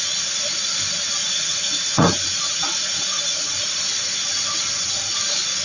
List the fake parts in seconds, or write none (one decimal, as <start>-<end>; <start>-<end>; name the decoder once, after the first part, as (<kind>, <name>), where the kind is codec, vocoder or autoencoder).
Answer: 1.2-3.8 (vocoder, Vocos)